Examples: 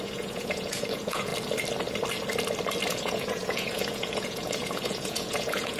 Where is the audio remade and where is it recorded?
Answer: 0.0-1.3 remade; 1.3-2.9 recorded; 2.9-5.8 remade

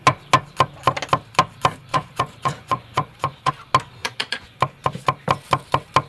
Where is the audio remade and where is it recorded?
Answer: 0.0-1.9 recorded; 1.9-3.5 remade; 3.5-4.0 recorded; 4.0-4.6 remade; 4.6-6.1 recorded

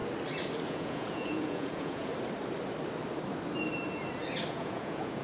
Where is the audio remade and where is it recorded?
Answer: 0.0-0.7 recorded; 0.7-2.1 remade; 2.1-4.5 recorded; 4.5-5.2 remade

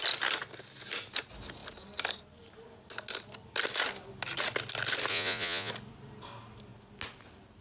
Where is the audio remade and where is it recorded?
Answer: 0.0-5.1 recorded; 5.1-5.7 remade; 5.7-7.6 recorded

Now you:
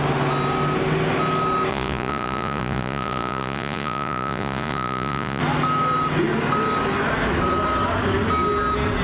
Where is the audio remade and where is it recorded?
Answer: 0.0-1.7 recorded; 1.7-5.4 remade; 5.4-9.0 recorded